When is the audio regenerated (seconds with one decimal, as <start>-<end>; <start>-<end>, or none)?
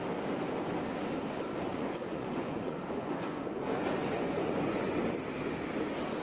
1.7-4.9